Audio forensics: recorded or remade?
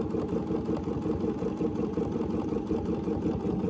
recorded